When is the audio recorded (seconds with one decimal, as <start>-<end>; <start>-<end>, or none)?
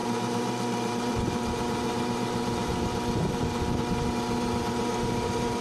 3.4-5.6